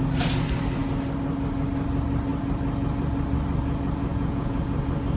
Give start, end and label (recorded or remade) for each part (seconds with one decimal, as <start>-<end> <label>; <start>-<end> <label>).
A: 0.0-4.1 recorded; 4.1-4.6 remade; 4.6-5.2 recorded